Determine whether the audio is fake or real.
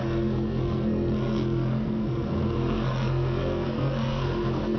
fake